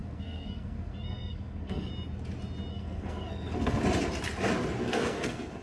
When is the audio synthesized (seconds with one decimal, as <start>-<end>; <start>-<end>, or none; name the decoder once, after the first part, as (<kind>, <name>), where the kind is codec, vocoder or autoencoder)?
0.0-1.9 (codec, SNAC); 2.7-3.8; 4.8-5.6